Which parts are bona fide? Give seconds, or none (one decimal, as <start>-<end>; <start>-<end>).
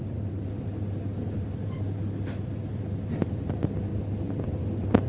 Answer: none